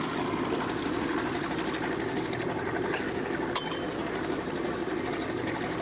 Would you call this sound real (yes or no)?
yes